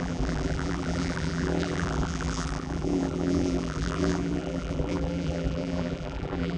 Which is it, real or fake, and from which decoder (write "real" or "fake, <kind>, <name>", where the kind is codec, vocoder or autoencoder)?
fake, vocoder, BigVGAN v2